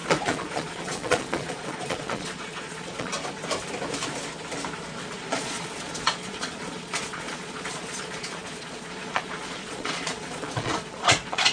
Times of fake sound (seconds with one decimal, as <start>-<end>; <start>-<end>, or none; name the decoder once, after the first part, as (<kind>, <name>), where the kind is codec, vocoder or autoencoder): 0.0-3.1 (vocoder, Vocos); 5.3-11.5